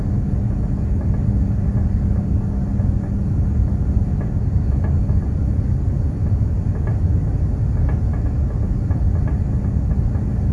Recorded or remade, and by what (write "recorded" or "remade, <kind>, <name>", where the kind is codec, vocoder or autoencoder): recorded